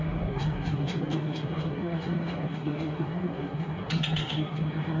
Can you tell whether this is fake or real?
fake